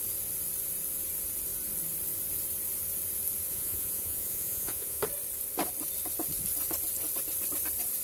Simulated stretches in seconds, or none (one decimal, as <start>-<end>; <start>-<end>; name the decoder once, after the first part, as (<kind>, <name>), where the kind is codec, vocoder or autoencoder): 3.5-5.0 (vocoder, Vocos)